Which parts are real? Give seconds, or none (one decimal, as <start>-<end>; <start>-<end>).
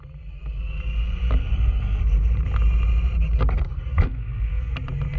0.0-1.4; 2.0-3.9; 4.7-5.2